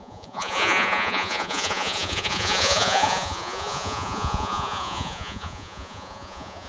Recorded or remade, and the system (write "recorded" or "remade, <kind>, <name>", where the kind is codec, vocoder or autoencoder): remade, vocoder, Vocos